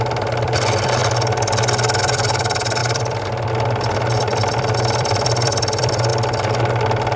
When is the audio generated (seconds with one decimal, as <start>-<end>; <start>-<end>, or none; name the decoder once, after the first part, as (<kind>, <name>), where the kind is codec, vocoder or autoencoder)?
0.0-1.0 (vocoder, BigVGAN v2); 2.0-6.1